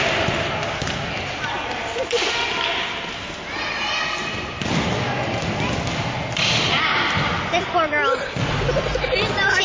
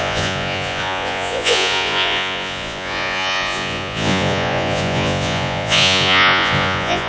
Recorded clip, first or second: first